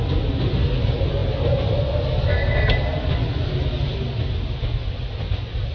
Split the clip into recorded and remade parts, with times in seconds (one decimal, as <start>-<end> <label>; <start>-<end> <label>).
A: 0.0-5.7 recorded

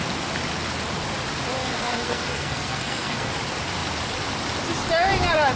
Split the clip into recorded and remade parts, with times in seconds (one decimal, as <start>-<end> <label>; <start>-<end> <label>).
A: 0.0-1.6 recorded; 1.6-3.3 remade; 3.3-5.6 recorded

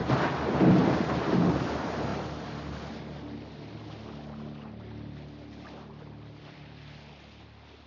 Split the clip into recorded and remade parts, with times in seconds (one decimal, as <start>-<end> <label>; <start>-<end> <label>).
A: 0.0-7.9 recorded

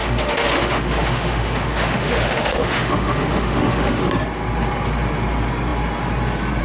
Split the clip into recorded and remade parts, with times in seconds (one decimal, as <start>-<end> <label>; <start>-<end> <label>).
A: 0.0-4.0 remade; 4.0-6.6 recorded

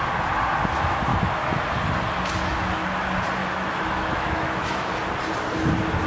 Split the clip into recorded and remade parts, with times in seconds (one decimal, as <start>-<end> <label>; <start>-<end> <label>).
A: 0.0-1.1 recorded; 1.1-1.6 remade; 1.6-3.4 recorded; 3.4-4.9 remade; 4.9-6.1 recorded

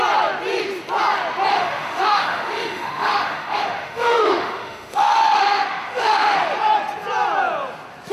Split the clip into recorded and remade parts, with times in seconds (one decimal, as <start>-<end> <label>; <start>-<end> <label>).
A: 0.0-1.5 recorded; 1.5-6.4 remade; 6.4-8.1 recorded

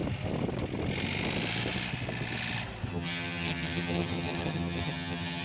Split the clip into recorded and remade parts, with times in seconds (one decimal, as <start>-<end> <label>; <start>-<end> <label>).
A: 0.0-2.9 recorded; 2.9-5.4 remade

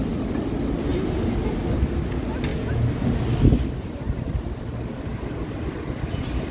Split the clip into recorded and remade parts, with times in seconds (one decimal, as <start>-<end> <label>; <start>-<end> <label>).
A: 0.0-6.5 recorded